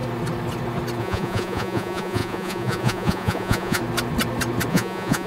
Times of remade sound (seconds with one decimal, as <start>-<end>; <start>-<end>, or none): 1.0-3.8; 4.7-5.3